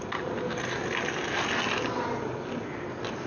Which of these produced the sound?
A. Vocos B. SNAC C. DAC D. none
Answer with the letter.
D